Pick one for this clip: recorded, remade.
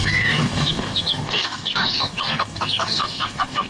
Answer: remade